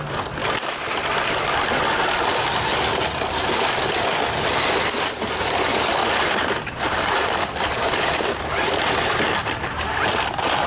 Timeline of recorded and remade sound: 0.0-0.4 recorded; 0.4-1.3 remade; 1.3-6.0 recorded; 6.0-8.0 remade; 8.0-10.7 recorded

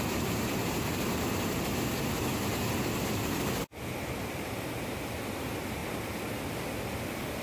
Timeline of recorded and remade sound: 0.0-7.4 recorded

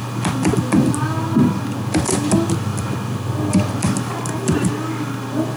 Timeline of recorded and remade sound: 0.0-5.6 recorded